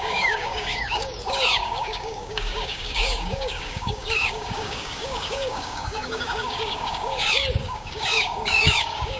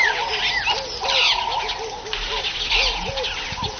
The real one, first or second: second